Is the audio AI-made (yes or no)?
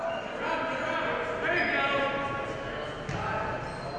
no